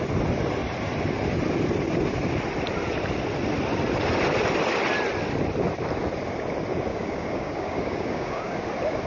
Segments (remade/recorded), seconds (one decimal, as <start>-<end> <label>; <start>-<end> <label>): 0.0-6.9 recorded; 6.9-8.6 remade; 8.6-9.1 recorded